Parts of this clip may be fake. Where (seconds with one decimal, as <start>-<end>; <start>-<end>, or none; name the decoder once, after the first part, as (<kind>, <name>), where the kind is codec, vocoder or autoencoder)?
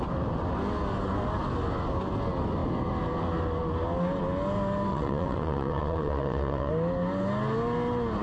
4.9-6.7 (vocoder, WaveNeXt)